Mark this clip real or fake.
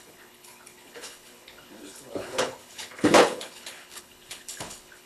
fake